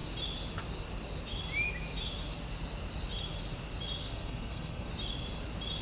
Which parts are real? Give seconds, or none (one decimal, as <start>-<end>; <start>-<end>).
0.0-4.0; 4.9-5.8